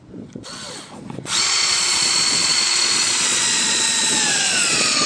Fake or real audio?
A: fake